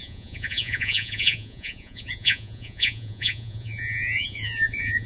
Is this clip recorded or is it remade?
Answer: remade